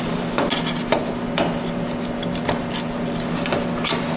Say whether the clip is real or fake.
real